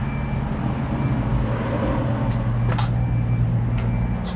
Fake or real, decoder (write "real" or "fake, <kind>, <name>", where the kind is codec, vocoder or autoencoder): real